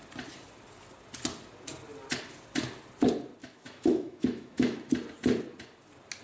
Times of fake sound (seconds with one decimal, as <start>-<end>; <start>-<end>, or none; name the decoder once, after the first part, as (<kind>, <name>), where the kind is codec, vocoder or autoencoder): 3.4-4.9 (autoencoder, DAC-VAE)